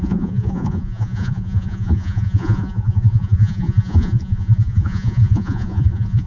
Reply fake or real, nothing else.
fake